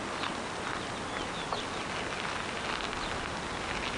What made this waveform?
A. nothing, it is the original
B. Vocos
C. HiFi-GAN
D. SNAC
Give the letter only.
A